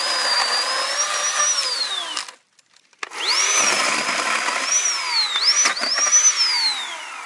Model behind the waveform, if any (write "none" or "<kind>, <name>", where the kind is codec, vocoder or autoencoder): none